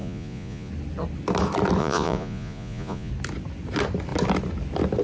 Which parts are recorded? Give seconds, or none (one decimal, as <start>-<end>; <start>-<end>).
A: 0.7-1.8; 3.1-5.0